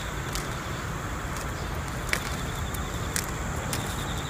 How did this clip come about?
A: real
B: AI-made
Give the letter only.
A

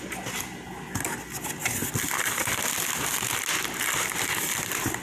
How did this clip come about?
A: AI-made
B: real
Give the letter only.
B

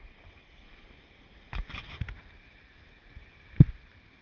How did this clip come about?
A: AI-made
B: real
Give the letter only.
B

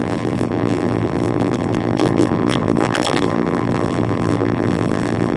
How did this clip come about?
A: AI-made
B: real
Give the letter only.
A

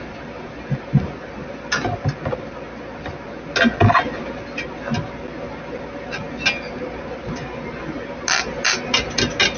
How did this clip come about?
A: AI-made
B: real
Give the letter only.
B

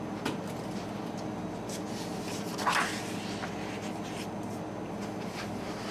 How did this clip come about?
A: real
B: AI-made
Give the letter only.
A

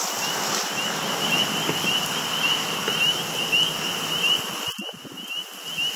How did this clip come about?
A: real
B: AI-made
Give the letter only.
A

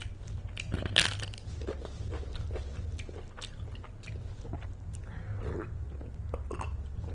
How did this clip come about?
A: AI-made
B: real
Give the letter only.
B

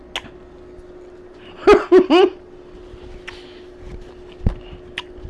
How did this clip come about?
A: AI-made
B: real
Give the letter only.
B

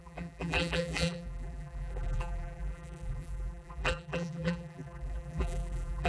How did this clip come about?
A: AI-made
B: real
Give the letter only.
A